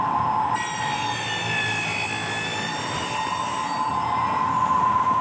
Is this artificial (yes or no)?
no